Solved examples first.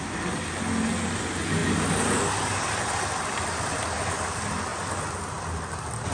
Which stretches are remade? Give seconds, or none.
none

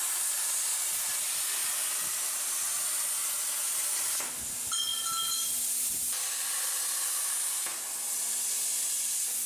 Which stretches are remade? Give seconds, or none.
7.7-9.5

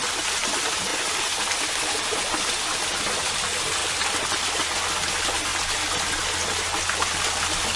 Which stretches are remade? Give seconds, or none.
0.0-0.9; 1.7-3.8; 5.1-5.5

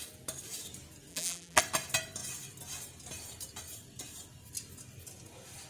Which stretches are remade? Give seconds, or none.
1.1-1.6

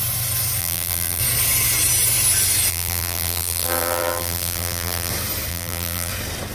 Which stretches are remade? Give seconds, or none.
0.6-1.2; 2.7-5.1; 5.5-6.1

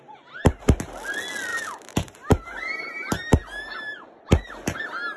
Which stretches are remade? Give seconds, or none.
1.5-4.1